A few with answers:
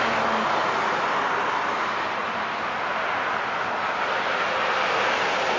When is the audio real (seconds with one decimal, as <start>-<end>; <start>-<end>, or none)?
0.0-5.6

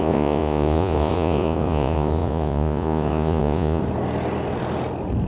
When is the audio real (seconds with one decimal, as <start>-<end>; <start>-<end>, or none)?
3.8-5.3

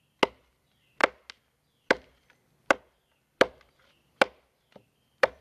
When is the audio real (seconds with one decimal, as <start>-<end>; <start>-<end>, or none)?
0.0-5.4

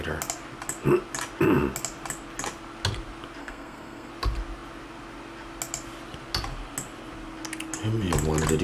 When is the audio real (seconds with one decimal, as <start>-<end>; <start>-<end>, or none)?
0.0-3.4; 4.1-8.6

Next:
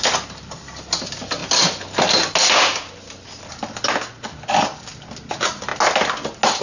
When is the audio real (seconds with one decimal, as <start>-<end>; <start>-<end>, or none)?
0.0-6.6

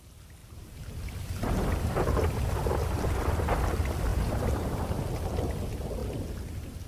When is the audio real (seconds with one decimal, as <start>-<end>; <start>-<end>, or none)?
0.0-0.4; 1.0-4.1; 5.0-6.9

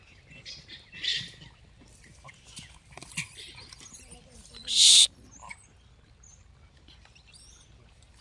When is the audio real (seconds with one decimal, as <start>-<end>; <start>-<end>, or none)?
0.0-8.2